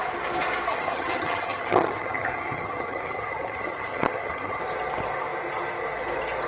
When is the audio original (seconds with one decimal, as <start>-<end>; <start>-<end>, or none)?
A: 0.0-0.7; 4.6-6.5